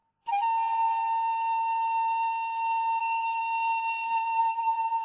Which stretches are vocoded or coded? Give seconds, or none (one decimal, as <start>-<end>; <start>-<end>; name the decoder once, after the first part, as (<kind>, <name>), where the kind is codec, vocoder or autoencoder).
3.0-3.4 (codec, SNAC); 4.4-5.0